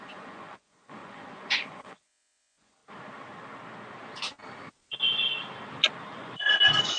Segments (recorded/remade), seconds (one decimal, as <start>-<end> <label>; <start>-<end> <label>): 0.0-2.8 remade; 2.8-6.2 recorded; 6.2-7.0 remade